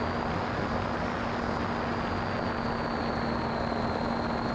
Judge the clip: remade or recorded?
recorded